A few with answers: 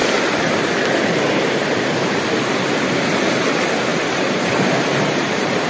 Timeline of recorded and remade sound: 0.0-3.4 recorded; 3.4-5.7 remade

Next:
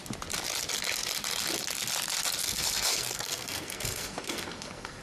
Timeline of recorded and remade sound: 0.0-2.4 recorded; 2.4-5.0 remade

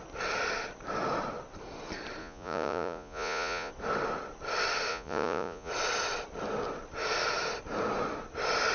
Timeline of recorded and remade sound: 0.0-2.2 recorded; 2.2-3.7 remade; 3.7-4.9 recorded; 4.9-5.7 remade; 5.7-8.7 recorded